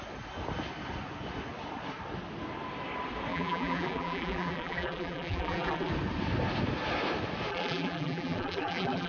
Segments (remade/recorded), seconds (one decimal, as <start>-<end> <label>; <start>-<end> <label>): 0.0-3.3 recorded; 3.3-5.9 remade; 5.9-7.5 recorded; 7.5-9.1 remade